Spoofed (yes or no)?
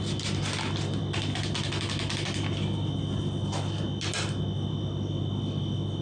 no